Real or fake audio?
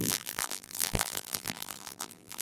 fake